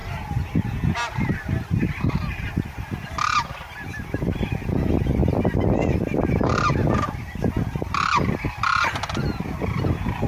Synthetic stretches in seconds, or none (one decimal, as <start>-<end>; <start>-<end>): none